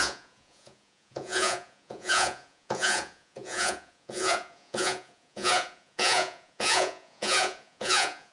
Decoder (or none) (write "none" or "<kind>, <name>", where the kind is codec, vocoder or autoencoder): vocoder, Vocos